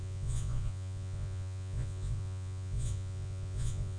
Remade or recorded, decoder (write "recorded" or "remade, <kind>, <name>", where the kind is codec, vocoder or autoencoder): remade, vocoder, Vocos